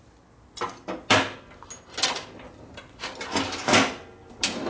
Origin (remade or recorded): recorded